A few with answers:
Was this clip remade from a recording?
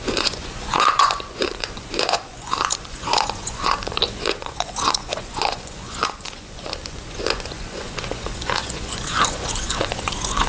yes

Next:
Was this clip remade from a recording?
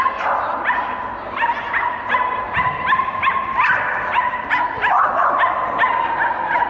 no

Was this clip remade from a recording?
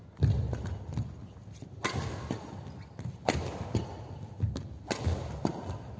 no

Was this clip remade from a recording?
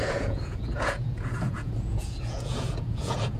yes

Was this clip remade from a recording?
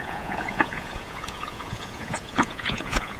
yes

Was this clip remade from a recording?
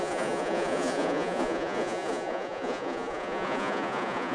yes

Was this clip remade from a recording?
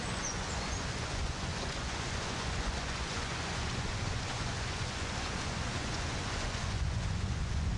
yes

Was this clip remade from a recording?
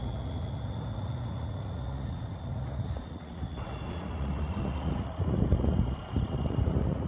yes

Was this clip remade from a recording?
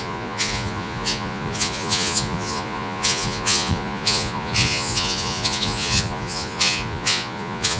yes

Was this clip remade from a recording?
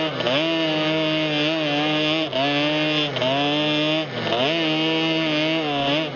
no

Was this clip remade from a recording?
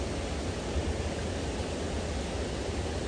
no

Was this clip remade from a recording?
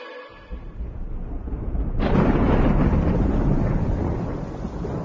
no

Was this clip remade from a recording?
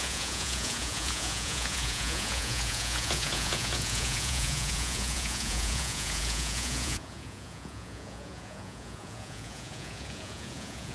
yes